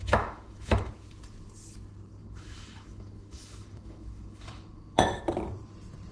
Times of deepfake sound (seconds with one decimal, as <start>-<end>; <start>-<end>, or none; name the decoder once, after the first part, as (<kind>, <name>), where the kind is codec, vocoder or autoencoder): 0.0-0.9 (autoencoder, DAC-VAE); 2.2-5.2